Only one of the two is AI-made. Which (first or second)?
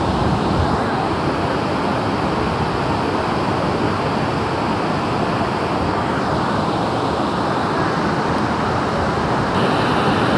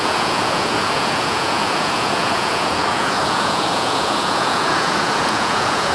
second